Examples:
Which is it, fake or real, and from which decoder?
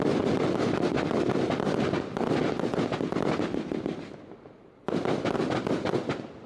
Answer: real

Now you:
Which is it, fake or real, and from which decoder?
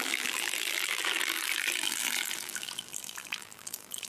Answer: fake, vocoder, BigVGAN v2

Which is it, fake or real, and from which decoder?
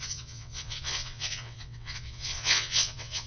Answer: fake, vocoder, WaveNeXt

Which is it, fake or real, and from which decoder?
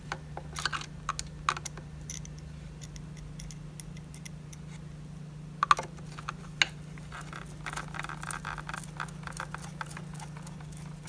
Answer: real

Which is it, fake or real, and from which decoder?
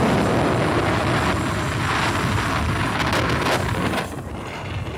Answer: real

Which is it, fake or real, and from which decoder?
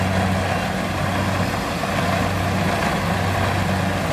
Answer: real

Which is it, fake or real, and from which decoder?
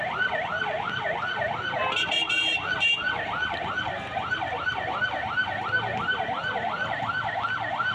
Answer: real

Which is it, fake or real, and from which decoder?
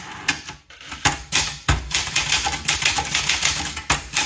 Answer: real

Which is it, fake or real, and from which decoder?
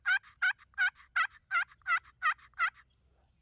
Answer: real